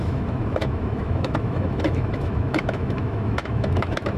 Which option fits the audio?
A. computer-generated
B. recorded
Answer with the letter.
A